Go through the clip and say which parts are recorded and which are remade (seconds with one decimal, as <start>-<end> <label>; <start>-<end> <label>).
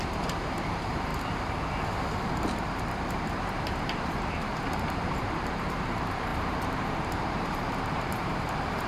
0.0-1.1 remade; 1.1-2.3 recorded; 2.3-8.9 remade